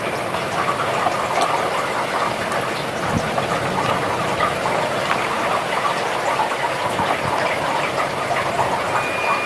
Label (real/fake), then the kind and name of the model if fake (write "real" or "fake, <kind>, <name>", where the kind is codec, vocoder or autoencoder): real